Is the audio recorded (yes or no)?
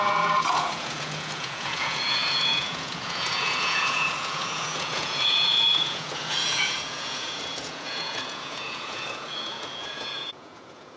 no